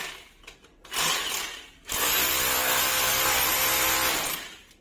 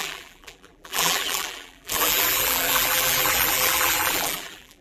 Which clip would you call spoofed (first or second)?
second